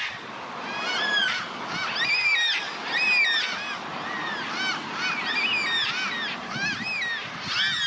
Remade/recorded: recorded